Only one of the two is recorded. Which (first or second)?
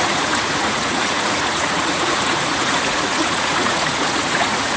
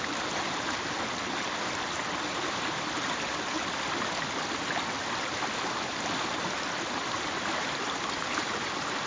second